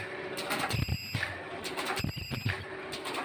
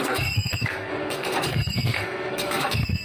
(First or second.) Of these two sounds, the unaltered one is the first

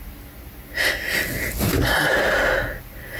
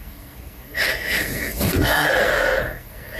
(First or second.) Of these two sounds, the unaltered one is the first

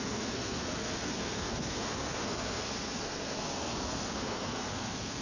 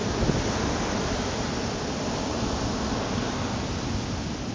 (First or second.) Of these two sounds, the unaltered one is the second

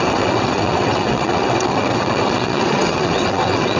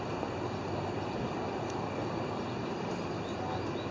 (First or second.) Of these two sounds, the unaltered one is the second